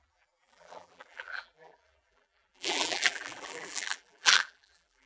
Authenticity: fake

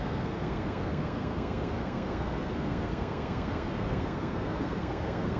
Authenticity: fake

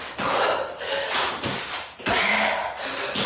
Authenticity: real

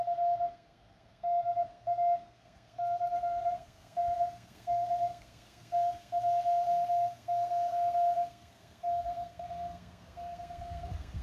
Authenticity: fake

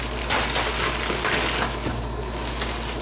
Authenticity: real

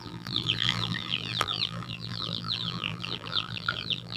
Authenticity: fake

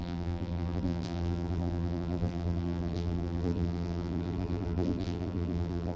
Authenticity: fake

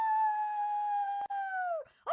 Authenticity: real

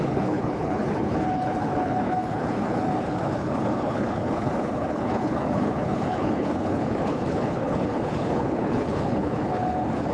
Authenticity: fake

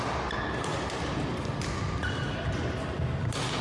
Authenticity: real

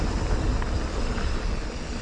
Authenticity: real